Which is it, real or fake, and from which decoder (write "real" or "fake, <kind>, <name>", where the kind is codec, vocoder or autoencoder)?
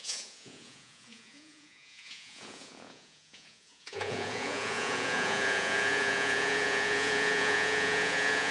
fake, vocoder, Vocos